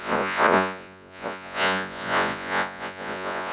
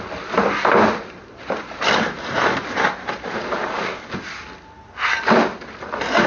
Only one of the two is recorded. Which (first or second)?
second